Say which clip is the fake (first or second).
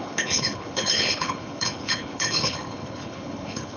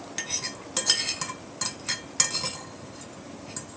first